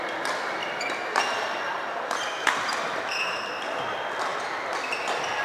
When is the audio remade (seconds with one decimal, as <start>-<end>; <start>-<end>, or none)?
0.6-3.8